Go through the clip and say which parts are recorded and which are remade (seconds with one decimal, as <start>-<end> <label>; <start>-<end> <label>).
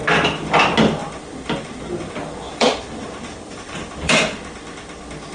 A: 0.0-1.0 recorded; 1.0-4.2 remade; 4.2-5.3 recorded